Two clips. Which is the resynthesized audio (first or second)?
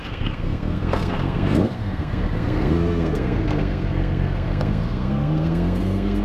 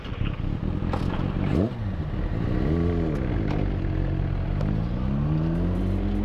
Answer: first